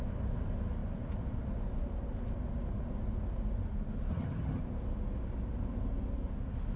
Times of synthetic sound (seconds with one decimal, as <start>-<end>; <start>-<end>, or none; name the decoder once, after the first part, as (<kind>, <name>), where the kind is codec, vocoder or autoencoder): 4.1-4.6 (vocoder, HiFi-GAN)